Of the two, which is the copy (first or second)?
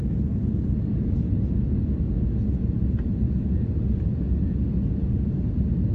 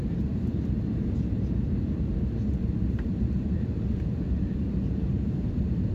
second